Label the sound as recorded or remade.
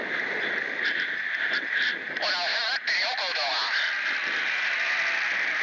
remade